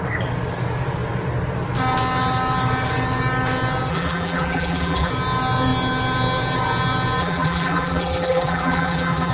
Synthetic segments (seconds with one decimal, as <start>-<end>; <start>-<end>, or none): 3.9-5.1; 7.2-9.3